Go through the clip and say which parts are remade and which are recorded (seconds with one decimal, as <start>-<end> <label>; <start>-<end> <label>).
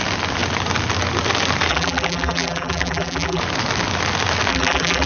0.0-1.7 recorded; 1.7-3.4 remade; 3.4-4.5 recorded; 4.5-5.1 remade